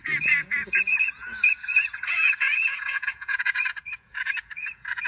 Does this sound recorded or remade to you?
remade